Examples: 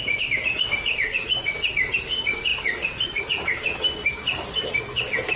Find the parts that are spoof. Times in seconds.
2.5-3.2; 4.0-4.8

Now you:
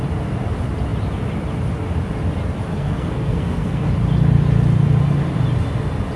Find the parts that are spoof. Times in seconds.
2.7-3.9

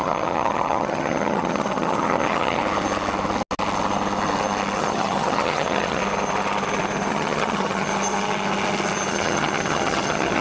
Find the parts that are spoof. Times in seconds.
0.0-2.6; 4.8-6.0; 7.1-7.9; 9.1-10.4

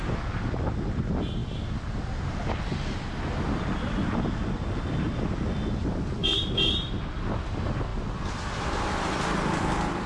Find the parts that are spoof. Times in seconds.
6.2-7.1; 7.9-8.6

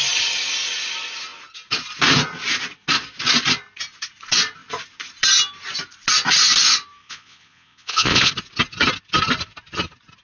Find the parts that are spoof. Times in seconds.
7.0-8.3

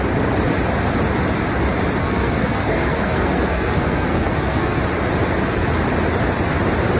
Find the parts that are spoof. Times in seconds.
2.0-4.8

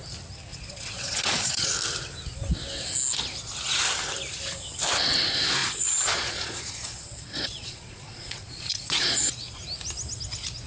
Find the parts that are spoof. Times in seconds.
0.5-1.7; 5.6-9.6

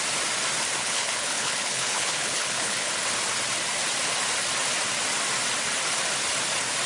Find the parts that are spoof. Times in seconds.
0.8-2.9